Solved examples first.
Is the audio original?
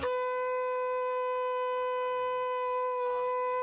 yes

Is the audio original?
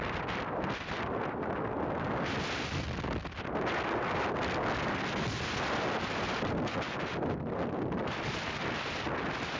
yes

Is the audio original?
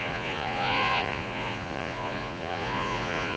no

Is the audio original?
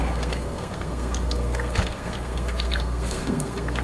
no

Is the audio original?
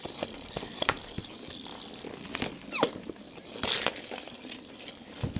yes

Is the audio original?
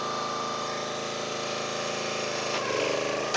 yes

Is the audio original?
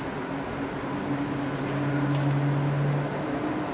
yes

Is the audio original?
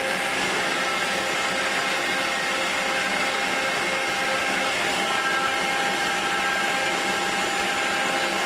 yes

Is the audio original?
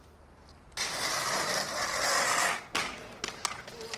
yes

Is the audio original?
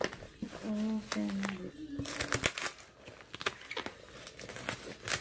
yes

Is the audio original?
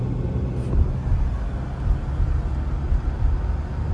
yes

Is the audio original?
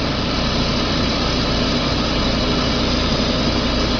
yes